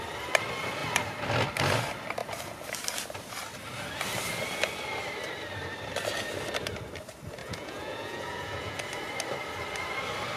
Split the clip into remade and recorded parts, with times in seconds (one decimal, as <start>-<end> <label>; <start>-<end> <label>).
0.0-7.4 recorded; 7.4-8.8 remade; 8.8-10.4 recorded

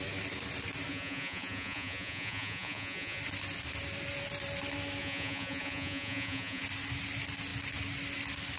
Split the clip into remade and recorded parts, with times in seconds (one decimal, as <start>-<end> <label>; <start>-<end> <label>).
0.0-0.9 recorded; 0.9-3.2 remade; 3.2-5.0 recorded; 5.0-6.6 remade; 6.6-8.6 recorded